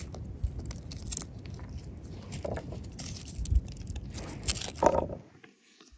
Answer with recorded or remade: recorded